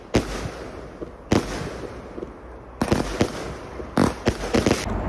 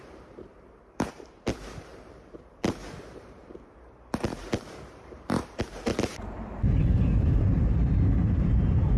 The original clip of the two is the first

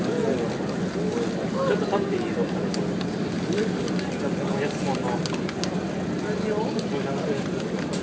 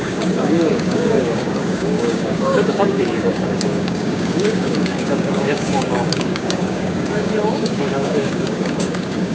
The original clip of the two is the first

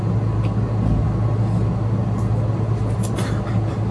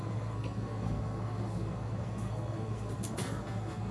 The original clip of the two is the first